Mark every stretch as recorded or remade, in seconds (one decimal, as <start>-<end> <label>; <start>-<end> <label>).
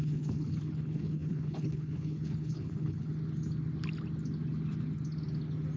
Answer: 0.0-3.1 remade; 3.1-5.8 recorded